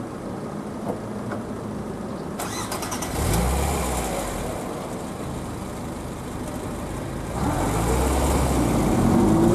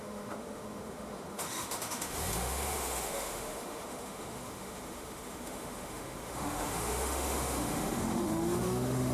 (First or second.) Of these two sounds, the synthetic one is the second